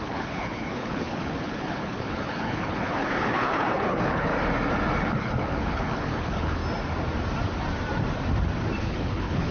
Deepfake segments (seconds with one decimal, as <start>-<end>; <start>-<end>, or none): 0.0-4.3; 5.0-6.6; 8.8-9.5